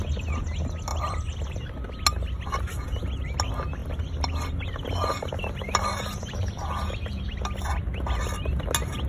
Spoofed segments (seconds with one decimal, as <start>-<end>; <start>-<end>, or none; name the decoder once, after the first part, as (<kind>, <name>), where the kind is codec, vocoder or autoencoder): 0.9-1.9 (vocoder, BigVGAN v2); 3.8-7.2